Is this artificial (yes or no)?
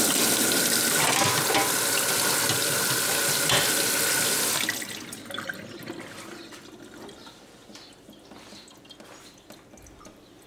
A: no